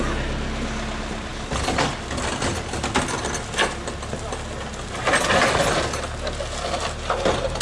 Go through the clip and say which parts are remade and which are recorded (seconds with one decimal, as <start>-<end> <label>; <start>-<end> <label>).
0.0-7.6 recorded